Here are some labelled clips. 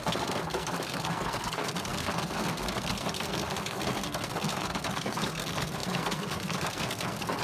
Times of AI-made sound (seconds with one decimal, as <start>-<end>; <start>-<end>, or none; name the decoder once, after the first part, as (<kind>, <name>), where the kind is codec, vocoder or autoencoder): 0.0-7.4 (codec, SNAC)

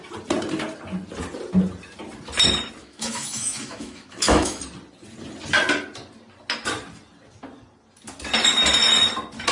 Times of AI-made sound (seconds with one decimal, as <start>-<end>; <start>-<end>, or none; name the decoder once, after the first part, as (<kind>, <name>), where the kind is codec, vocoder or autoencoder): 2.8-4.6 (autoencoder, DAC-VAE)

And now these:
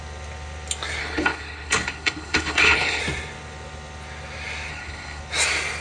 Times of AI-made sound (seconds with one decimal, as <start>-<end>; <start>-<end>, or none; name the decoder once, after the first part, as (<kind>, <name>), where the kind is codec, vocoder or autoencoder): 1.0-3.0 (codec, HILCodec); 4.7-5.2

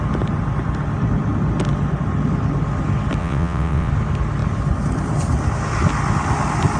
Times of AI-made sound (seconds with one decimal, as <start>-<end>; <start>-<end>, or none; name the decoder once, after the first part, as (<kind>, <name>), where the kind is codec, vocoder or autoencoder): 3.2-3.9 (vocoder, WaveNeXt)

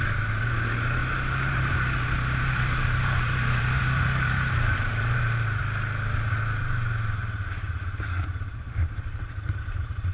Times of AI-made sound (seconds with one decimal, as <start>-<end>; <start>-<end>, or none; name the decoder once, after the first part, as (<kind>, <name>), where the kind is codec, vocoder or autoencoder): 0.0-5.6 (vocoder, BigVGAN v2); 7.5-10.1

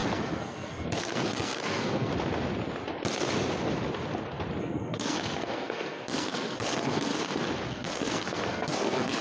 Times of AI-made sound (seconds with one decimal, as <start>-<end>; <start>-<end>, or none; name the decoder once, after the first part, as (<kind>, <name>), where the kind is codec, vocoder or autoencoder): 0.0-2.1 (codec, SNAC); 4.6-7.1; 7.7-9.2

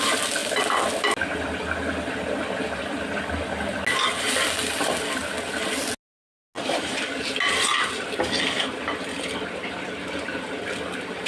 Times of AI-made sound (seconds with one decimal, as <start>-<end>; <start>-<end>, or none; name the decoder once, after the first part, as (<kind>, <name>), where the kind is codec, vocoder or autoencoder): none

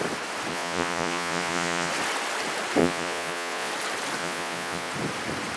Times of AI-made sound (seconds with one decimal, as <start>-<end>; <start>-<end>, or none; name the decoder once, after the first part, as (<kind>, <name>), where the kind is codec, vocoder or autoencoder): 0.5-1.9 (vocoder, Vocos); 2.8-3.7; 4.2-4.9